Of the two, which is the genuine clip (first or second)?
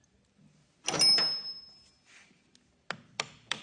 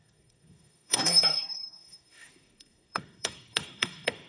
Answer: first